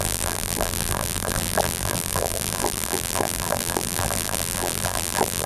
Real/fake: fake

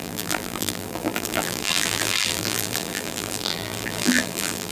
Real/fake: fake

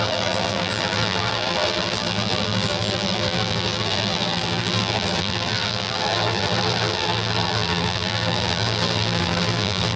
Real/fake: fake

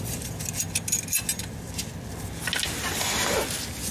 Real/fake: real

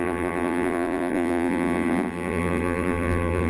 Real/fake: fake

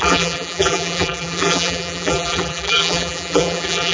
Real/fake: fake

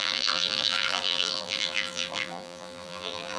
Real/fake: fake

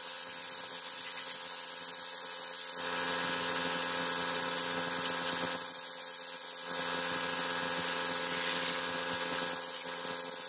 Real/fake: real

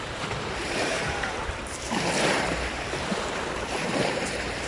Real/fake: fake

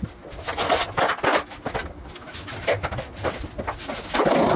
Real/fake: real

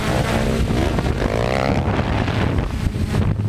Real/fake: real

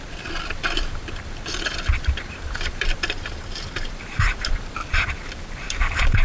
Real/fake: fake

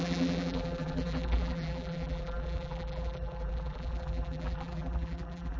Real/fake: fake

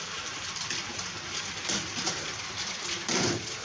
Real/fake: fake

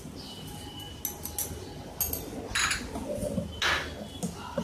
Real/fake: real